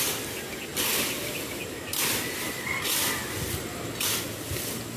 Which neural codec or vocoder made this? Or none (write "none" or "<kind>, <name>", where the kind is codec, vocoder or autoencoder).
none